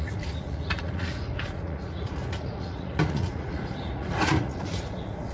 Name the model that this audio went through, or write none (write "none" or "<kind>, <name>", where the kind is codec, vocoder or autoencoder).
vocoder, Vocos